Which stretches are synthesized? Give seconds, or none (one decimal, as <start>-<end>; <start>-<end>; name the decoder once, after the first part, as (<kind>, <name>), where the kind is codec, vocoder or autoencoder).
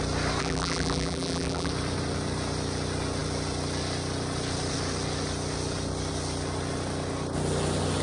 0.4-1.7 (vocoder, BigVGAN v2)